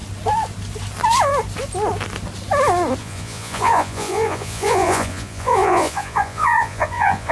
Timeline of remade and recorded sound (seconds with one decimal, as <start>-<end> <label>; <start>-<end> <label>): 0.0-3.0 recorded; 3.0-7.3 remade